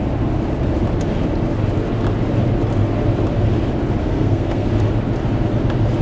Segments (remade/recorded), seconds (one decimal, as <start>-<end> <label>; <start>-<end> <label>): 0.0-4.0 recorded; 4.0-4.7 remade; 4.7-6.0 recorded